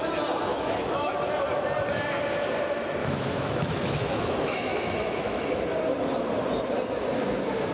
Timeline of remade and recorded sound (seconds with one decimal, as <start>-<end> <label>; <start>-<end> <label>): 0.0-0.5 recorded; 0.5-1.1 remade; 1.1-3.0 recorded; 3.0-5.6 remade; 5.6-7.7 recorded